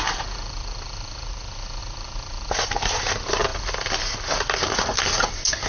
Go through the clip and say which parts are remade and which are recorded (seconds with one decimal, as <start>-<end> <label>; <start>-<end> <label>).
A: 0.0-5.7 recorded